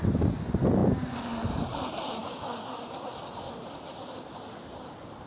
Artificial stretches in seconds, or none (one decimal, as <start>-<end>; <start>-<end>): 2.2-2.7